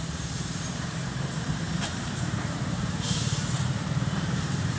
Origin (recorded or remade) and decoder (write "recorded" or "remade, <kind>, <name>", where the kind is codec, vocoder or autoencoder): remade, vocoder, BigVGAN v2